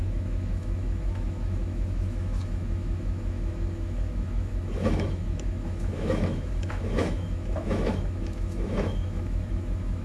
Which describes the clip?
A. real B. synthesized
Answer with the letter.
B